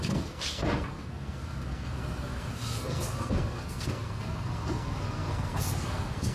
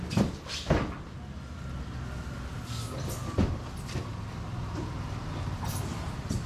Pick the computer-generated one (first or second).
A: first